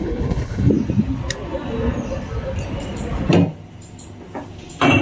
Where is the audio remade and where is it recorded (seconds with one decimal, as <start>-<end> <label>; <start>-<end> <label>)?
0.0-0.7 remade; 0.7-5.0 recorded